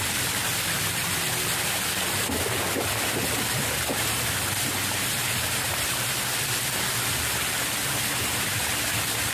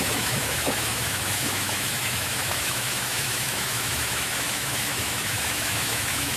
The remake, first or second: second